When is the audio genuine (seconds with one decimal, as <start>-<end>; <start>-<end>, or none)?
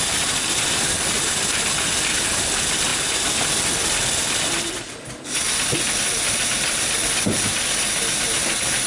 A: 0.0-8.9